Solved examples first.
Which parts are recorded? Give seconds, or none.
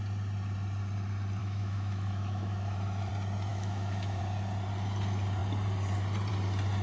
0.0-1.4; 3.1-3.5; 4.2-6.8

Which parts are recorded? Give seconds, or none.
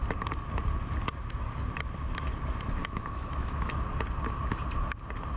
0.0-2.8; 3.7-5.4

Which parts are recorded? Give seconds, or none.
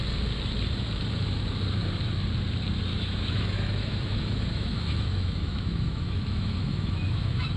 0.0-2.9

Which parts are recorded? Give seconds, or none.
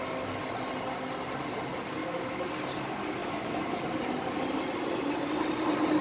0.0-2.0; 2.5-3.2; 3.8-6.0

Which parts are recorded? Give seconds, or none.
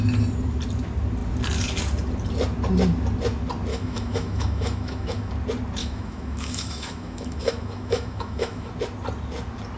0.0-3.7; 5.3-5.8; 8.7-9.8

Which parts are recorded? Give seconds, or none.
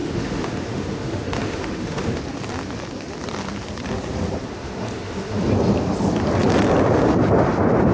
2.2-4.5; 5.4-7.9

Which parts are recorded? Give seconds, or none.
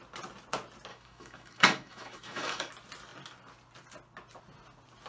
0.0-0.9; 2.7-5.1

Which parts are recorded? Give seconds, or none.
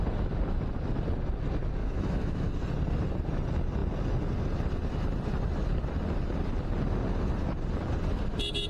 0.0-1.8; 2.5-8.7